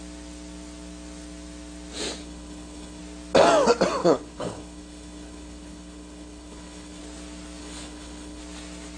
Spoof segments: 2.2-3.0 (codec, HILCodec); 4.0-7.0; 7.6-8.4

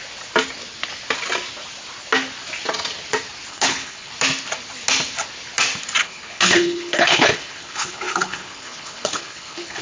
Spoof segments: 3.5-4.1 (codec, HILCodec); 6.0-9.8

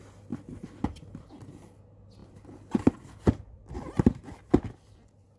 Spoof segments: none